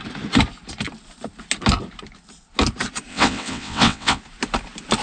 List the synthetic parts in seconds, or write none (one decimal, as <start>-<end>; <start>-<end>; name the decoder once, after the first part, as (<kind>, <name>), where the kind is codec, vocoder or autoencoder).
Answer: 3.1-4.2 (vocoder, WaveNeXt)